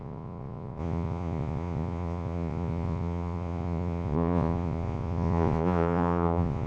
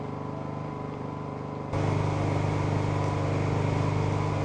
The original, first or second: second